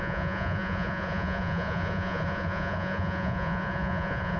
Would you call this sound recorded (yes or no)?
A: no